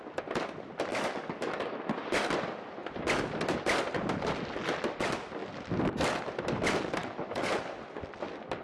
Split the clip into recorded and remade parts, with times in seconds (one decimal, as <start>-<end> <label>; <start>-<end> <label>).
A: 0.0-0.9 recorded; 0.9-1.7 remade; 1.7-7.0 recorded; 7.0-7.5 remade; 7.5-8.6 recorded